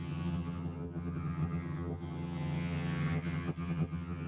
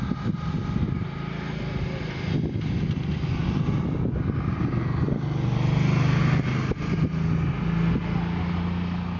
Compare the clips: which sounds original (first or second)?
second